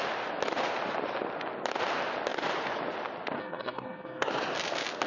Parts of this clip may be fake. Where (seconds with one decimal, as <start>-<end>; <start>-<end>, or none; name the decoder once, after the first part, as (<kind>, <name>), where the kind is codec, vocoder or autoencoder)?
3.4-4.3 (codec, SNAC)